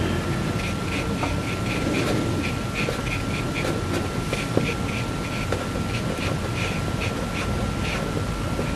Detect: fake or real real